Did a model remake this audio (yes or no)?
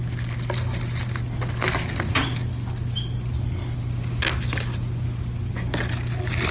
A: no